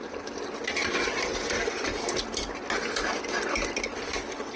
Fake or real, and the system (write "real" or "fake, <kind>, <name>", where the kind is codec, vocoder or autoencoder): real